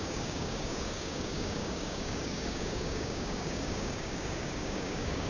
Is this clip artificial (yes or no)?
yes